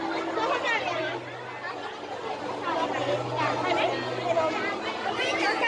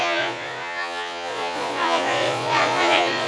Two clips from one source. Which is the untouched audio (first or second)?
first